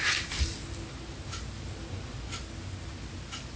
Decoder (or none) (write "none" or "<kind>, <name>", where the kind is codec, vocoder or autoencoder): none